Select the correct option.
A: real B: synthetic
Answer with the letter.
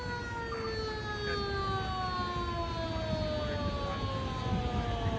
A